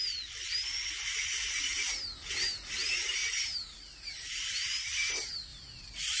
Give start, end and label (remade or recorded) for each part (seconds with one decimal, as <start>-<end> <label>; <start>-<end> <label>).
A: 0.0-2.8 recorded; 2.8-6.2 remade